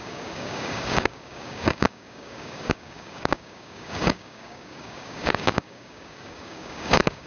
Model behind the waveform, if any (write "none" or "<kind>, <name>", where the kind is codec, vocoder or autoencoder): codec, DAC